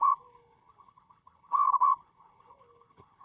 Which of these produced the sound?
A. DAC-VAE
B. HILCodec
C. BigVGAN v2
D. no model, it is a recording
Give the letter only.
B